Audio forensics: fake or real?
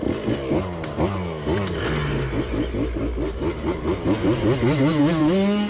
real